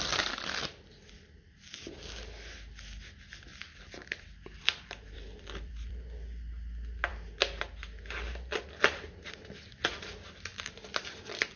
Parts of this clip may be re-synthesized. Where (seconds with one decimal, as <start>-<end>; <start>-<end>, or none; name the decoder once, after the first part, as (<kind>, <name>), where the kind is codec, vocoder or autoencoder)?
3.5-6.0 (vocoder, BigVGAN v2); 10.5-11.6